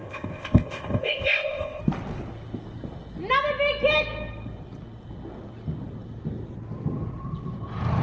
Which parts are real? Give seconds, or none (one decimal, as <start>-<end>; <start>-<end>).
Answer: 1.8-8.0